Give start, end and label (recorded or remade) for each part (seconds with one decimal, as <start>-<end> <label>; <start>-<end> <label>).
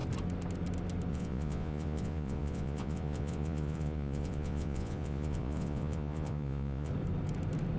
0.0-1.1 recorded; 1.1-6.9 remade; 6.9-7.8 recorded